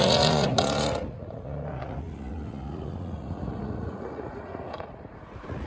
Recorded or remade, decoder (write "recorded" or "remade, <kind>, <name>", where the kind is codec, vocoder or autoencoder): remade, vocoder, Vocos